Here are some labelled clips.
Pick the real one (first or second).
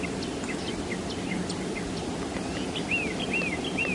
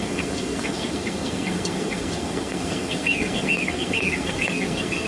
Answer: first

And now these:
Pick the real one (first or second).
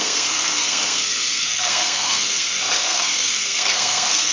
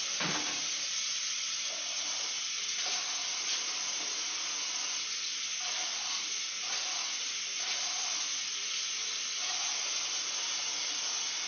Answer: second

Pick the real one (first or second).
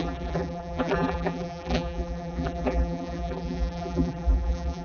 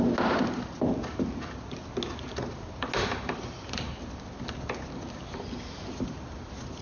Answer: second